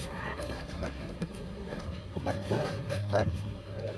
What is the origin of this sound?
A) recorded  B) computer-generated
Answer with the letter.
B